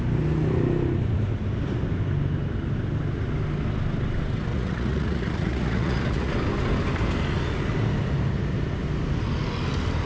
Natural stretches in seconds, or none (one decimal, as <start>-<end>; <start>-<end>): 0.0-4.5; 6.3-10.1